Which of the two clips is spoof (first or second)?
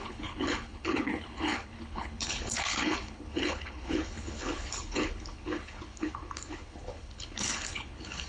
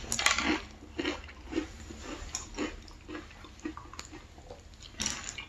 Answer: first